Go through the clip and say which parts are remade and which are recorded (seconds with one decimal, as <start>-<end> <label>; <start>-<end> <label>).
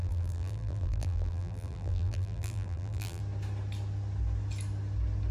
0.0-3.2 remade; 3.2-5.3 recorded